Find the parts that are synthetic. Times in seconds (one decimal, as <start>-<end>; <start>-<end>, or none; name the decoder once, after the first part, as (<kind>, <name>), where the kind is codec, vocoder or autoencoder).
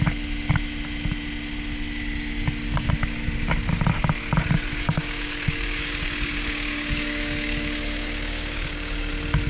4.7-9.1 (codec, DAC)